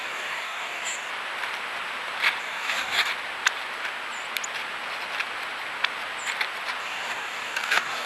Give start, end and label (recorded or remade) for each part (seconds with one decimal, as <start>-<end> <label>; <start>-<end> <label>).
0.0-1.1 remade; 1.1-2.4 recorded; 2.4-3.1 remade; 3.1-6.8 recorded; 6.8-8.1 remade